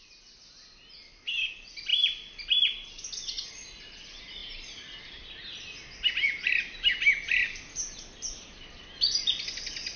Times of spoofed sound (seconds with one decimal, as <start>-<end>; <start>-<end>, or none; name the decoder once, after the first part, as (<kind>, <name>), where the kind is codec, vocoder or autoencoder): none